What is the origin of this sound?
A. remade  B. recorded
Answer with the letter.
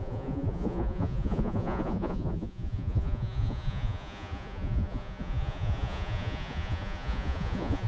A